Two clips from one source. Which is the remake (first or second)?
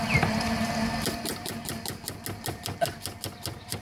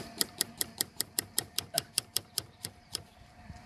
second